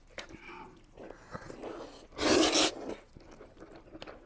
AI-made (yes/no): no